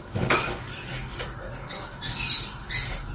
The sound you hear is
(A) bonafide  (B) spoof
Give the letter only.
B